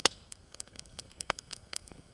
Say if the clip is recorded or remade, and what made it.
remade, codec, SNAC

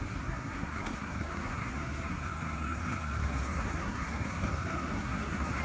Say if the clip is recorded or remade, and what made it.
remade, codec, SNAC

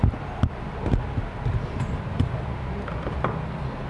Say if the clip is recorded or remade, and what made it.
recorded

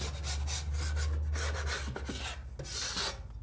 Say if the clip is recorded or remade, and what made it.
recorded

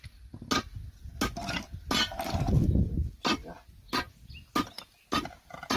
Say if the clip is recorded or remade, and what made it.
recorded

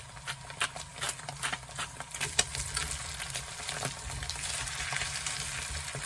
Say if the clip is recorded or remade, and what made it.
recorded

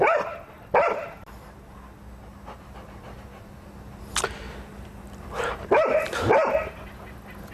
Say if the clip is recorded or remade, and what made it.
recorded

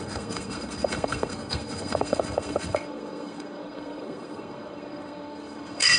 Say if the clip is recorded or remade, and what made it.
remade, codec, SNAC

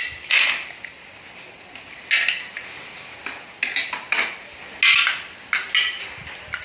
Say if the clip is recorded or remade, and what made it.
recorded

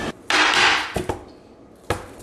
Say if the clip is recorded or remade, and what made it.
recorded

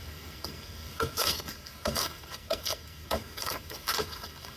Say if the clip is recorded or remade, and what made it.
remade, codec, SNAC